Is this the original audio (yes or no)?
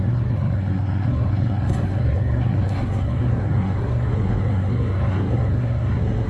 no